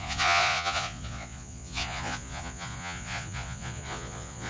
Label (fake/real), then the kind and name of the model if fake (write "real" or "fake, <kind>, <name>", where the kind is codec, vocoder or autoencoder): fake, vocoder, Vocos